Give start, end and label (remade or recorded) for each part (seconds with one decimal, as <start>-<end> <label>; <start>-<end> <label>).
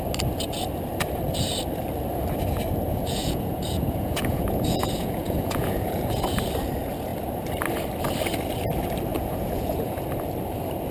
0.0-2.9 recorded; 2.9-6.4 remade; 6.4-9.1 recorded; 9.1-10.0 remade; 10.0-10.9 recorded